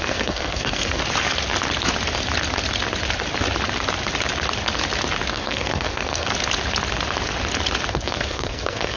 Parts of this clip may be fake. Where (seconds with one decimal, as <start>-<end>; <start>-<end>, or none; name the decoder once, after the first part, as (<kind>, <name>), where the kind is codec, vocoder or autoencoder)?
0.0-1.0 (codec, SNAC); 5.3-6.3; 7.9-9.0